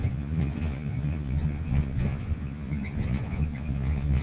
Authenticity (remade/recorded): remade